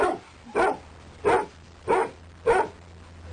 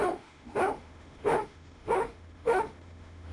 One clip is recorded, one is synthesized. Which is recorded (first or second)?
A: first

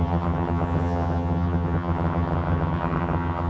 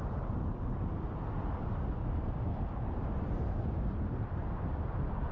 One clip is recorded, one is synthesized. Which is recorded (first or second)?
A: second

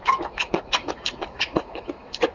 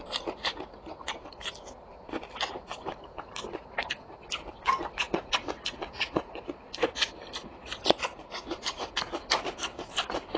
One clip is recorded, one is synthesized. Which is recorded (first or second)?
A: second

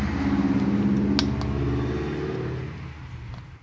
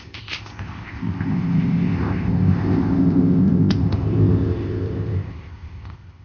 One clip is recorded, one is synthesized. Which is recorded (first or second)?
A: first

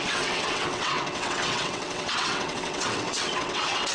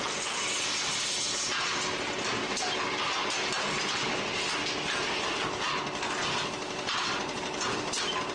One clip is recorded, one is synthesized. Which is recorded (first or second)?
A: second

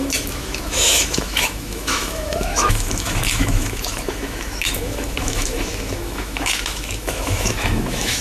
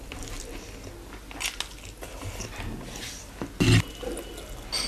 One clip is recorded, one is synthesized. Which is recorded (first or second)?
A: second